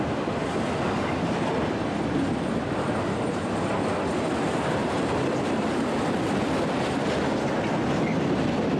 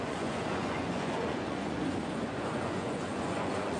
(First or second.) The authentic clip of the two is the first